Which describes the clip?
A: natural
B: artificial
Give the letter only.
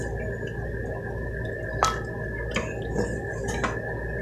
A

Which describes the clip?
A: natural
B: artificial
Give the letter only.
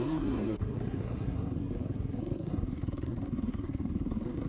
B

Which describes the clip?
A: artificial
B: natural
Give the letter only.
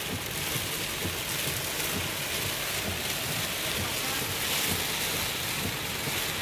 B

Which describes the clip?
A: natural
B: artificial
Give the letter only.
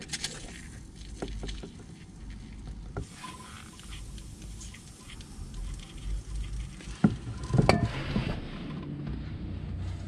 A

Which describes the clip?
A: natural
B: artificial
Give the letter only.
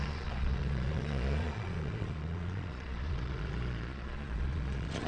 B